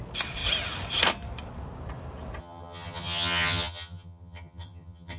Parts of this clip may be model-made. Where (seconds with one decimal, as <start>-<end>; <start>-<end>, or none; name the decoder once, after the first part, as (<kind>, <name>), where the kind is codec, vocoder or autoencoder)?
2.4-5.2 (vocoder, HiFi-GAN)